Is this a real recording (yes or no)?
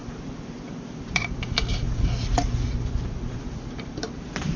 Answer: no